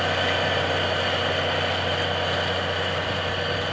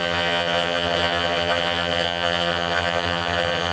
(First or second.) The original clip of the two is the first